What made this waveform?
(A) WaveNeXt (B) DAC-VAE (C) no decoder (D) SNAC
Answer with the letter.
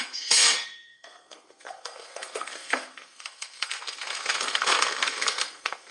D